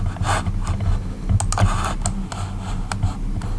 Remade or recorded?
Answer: recorded